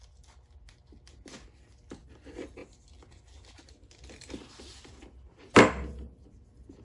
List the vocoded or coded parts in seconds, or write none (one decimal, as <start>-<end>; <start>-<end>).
none